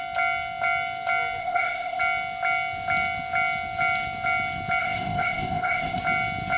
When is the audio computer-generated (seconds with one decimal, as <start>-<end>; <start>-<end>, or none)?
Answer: 1.4-2.0; 4.8-6.0